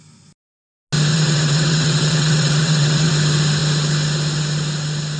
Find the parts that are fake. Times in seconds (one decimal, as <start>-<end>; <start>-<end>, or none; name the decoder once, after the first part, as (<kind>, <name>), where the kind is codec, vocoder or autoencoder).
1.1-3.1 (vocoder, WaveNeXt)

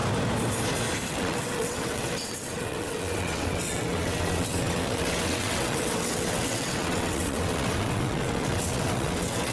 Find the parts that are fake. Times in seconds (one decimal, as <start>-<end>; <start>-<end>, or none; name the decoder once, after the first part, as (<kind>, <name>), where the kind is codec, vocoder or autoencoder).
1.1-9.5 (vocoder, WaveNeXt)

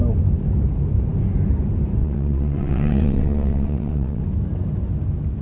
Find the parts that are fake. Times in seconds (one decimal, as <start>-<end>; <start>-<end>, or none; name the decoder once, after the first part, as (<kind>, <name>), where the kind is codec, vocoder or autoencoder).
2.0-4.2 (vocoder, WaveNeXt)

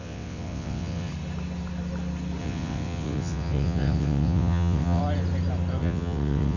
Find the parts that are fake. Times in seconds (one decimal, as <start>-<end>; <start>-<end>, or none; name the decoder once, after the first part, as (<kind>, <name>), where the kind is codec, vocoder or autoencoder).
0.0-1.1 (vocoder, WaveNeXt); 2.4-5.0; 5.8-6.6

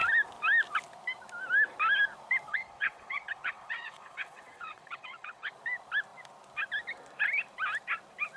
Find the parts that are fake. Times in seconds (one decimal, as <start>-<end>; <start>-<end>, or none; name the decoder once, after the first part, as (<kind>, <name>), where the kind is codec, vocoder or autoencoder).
2.5-5.5 (vocoder, WaveNeXt)

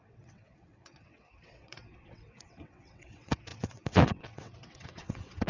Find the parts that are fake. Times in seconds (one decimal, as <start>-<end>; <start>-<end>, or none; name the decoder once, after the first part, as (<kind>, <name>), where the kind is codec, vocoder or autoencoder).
0.0-5.5 (vocoder, WaveNeXt)

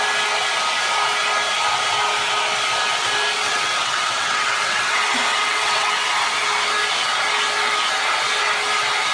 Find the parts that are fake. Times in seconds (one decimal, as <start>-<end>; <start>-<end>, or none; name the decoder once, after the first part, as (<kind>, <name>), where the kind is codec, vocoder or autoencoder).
3.4-4.8 (vocoder, WaveNeXt); 5.3-5.9